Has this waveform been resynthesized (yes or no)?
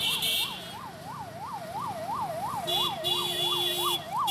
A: no